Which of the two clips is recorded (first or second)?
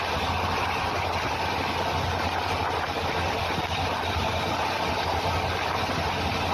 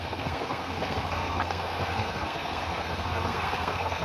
first